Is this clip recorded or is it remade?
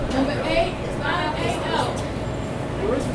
recorded